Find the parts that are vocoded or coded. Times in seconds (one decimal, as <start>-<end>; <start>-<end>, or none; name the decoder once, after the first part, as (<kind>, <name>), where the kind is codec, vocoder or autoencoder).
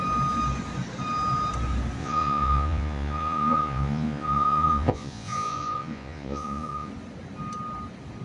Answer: 2.0-6.9 (vocoder, Vocos)